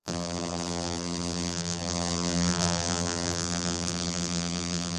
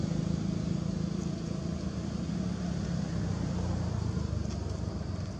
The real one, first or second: second